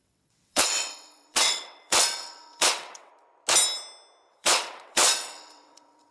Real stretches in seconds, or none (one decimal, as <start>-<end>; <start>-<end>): 3.1-4.3